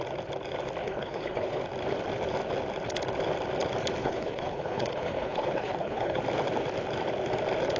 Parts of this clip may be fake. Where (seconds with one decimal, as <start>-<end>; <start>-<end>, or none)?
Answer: 0.8-1.6; 4.0-6.2